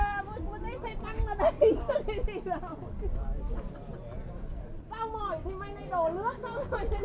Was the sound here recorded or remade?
recorded